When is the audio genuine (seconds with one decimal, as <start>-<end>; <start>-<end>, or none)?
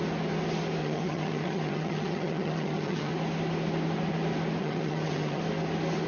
0.0-0.8; 3.1-4.6; 5.4-6.1